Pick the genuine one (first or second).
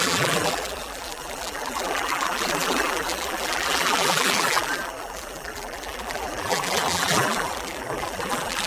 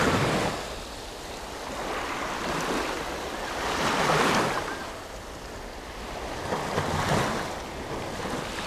second